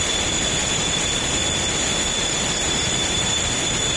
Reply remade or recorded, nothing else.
recorded